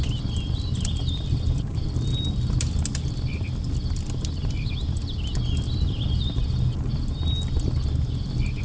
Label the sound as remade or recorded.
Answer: recorded